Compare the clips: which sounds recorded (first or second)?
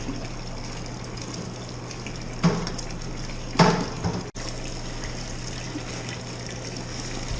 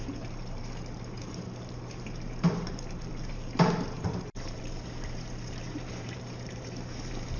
first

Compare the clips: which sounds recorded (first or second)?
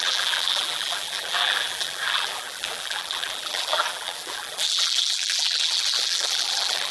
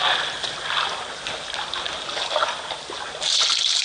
second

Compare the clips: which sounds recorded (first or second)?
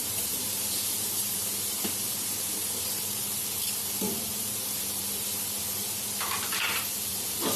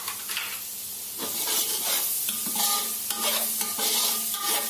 second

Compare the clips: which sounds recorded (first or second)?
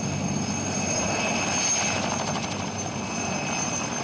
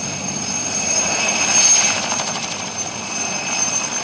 first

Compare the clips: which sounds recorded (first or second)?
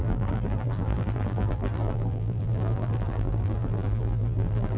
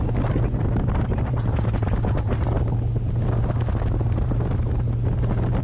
second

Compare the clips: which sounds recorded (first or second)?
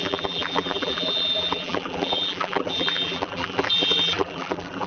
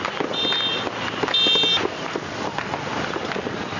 second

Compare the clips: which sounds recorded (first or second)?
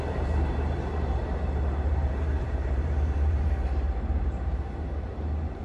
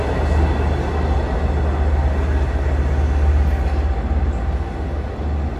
second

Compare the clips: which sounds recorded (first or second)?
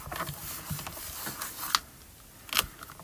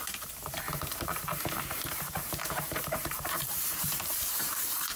first